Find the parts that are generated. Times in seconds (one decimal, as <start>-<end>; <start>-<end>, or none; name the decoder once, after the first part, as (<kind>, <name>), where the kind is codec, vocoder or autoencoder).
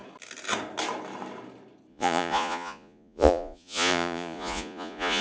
1.9-5.2 (vocoder, Vocos)